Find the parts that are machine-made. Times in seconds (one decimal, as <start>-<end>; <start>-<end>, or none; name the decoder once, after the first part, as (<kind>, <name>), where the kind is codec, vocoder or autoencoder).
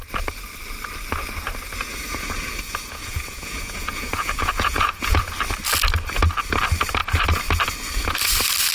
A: 1.9-5.2 (vocoder, Vocos)